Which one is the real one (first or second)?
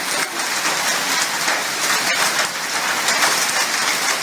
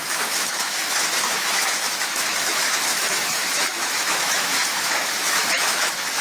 first